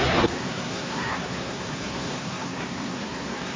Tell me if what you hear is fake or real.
fake